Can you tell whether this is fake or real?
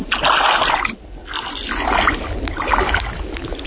real